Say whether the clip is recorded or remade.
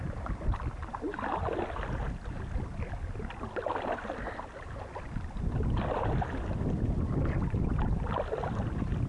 recorded